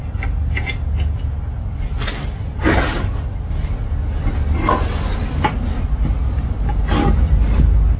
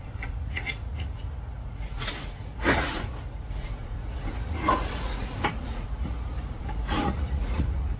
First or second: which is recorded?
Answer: first